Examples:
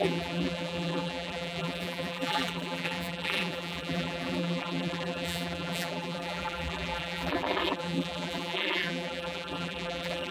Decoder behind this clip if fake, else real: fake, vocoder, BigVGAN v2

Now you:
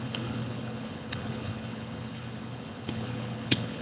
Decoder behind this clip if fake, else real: fake, codec, HILCodec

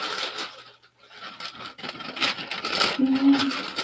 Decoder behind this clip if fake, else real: real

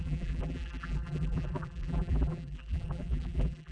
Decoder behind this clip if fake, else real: fake, vocoder, BigVGAN v2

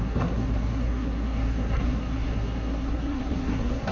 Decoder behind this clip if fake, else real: fake, codec, SNAC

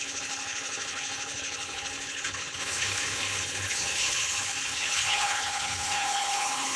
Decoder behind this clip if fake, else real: fake, codec, HILCodec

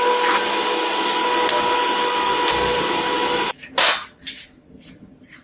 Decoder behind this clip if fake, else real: real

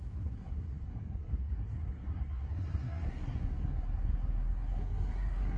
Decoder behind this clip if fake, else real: fake, codec, SNAC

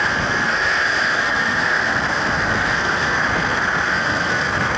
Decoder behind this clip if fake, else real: fake, codec, SNAC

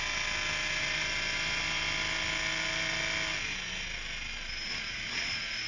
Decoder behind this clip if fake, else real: real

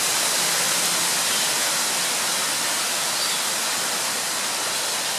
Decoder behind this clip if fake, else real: real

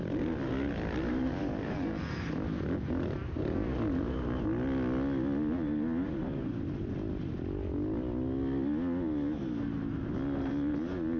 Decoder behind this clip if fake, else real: real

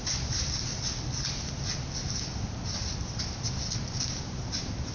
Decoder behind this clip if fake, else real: real